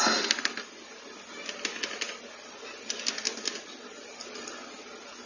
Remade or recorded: recorded